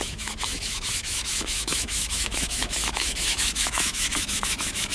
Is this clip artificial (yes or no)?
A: yes